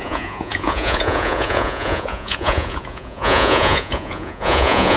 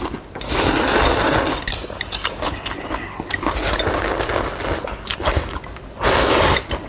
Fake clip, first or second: first